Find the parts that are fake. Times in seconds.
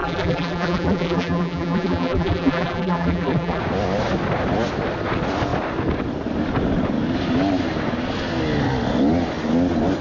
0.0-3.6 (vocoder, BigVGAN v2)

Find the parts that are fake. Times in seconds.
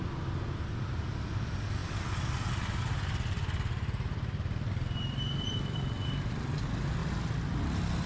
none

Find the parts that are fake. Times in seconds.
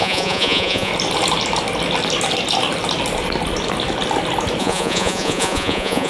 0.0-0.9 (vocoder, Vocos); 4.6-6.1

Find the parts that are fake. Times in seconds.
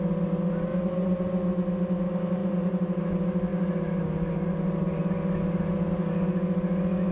0.7-1.2 (vocoder, BigVGAN v2); 2.4-3.0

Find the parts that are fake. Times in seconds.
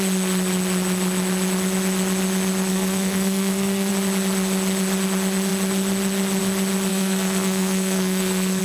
2.7-3.9 (codec, SNAC); 6.9-8.6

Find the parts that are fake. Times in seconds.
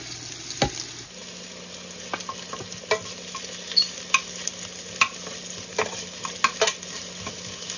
none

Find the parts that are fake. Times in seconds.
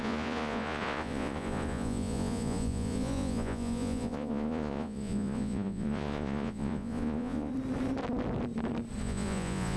0.0-7.5 (vocoder, Vocos); 9.0-9.8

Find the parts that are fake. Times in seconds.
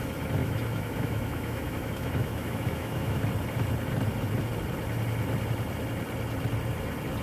0.4-3.2 (autoencoder, DAC-VAE)